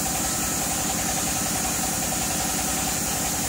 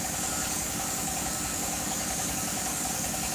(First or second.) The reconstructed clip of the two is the second